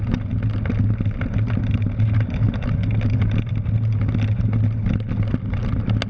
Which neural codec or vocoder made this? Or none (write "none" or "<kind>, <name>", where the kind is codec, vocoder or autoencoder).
none